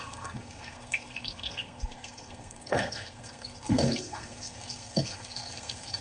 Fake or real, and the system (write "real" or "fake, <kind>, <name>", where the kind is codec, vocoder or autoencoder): fake, codec, SNAC